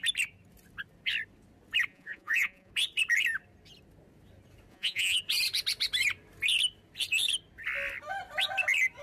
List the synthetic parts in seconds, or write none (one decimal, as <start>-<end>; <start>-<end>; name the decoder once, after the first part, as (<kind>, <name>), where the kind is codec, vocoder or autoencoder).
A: 1.9-2.7 (vocoder, Vocos); 4.7-5.2